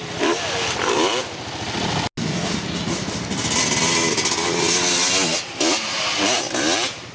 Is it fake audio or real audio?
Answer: real